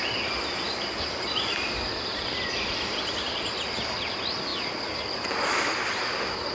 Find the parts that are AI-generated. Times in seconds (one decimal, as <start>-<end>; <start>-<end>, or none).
none

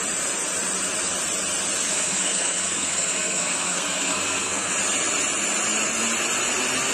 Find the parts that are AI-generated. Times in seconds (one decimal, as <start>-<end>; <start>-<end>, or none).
1.9-4.7

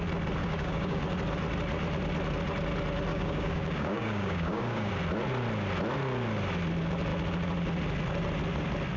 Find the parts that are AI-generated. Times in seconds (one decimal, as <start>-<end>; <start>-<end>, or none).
0.4-1.0; 3.1-4.9

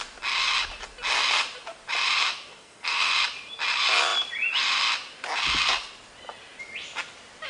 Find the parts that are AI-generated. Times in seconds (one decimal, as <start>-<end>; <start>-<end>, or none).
2.5-3.1